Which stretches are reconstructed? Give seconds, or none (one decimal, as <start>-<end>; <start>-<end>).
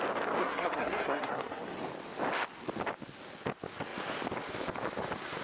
0.4-1.6